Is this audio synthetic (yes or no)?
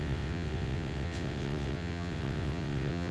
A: yes